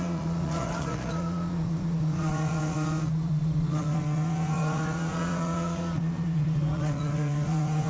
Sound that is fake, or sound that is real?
fake